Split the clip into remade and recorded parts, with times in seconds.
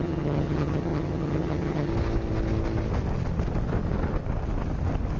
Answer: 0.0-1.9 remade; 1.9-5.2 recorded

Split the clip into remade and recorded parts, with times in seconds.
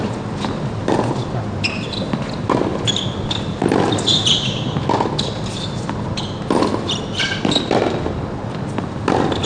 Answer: 0.0-9.5 recorded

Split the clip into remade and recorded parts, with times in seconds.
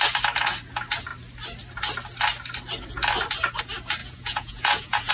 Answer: 0.0-4.0 recorded; 4.0-5.1 remade